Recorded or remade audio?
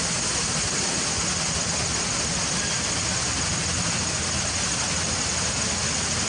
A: recorded